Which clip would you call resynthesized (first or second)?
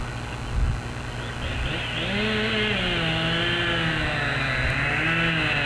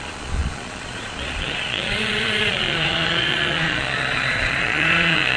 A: second